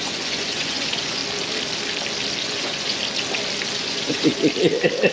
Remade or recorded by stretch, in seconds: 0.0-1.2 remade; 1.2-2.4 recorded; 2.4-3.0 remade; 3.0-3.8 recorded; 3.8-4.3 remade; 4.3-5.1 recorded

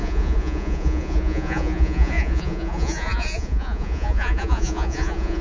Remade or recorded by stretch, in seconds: 0.0-5.4 remade

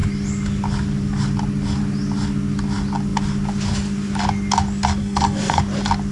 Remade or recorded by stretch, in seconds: 0.0-5.0 recorded; 5.0-5.6 remade; 5.6-6.1 recorded

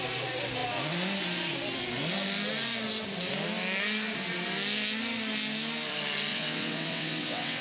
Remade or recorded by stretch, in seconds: 0.0-6.3 recorded; 6.3-7.6 remade

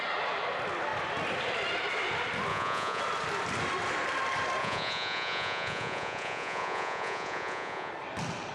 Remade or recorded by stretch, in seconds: 0.0-2.5 recorded; 2.5-3.0 remade; 3.0-4.6 recorded; 4.6-7.9 remade; 7.9-8.5 recorded

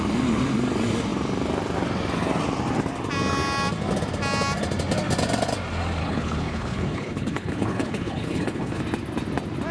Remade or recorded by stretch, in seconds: 0.0-6.0 recorded; 6.0-8.8 remade; 8.8-9.7 recorded